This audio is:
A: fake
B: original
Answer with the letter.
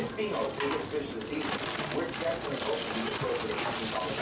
B